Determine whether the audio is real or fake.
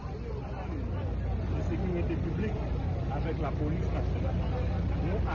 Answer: real